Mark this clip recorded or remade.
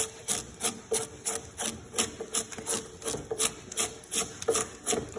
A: recorded